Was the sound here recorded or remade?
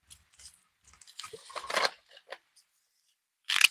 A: recorded